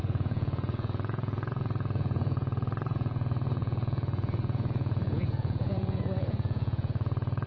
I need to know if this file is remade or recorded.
remade